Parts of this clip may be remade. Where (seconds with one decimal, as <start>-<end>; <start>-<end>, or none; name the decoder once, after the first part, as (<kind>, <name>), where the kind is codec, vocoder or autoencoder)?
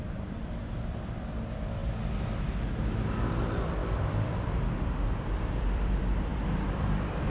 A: 0.0-1.8 (vocoder, BigVGAN v2); 2.5-7.3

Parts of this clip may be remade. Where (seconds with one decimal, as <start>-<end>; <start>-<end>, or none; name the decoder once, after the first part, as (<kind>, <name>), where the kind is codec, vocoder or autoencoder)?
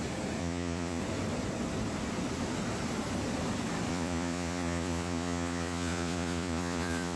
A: 0.4-1.0 (vocoder, Vocos); 3.9-7.2